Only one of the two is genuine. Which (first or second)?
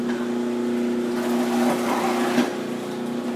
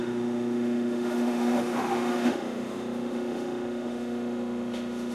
first